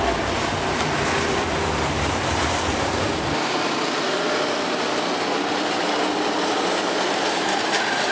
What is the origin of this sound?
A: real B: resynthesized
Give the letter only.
B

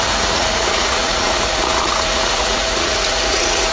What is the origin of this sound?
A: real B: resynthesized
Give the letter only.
B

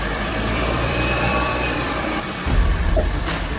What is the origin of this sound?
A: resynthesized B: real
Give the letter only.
A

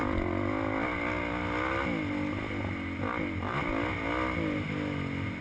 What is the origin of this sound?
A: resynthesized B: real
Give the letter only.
B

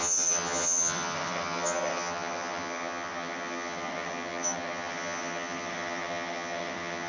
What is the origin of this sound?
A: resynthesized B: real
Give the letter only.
A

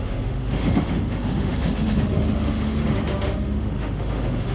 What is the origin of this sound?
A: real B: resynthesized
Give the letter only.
B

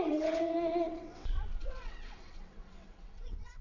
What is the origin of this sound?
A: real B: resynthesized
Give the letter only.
B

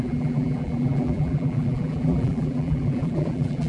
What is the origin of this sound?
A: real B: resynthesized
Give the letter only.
B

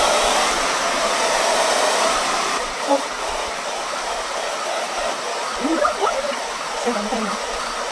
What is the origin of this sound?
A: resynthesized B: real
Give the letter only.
A